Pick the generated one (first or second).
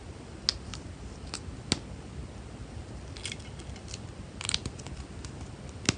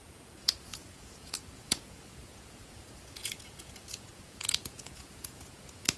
second